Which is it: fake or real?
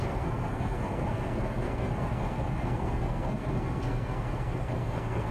fake